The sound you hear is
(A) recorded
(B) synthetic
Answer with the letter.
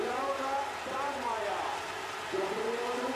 A